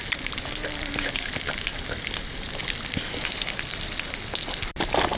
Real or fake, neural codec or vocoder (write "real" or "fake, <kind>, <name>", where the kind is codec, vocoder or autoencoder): real